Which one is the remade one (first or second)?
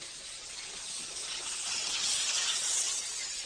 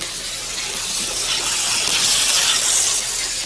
first